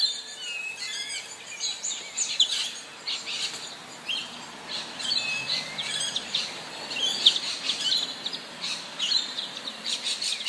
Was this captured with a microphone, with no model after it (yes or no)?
yes